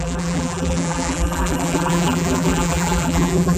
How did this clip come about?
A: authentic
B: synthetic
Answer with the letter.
B